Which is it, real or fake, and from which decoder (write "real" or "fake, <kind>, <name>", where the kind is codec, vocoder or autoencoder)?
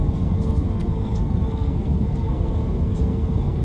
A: fake, codec, SNAC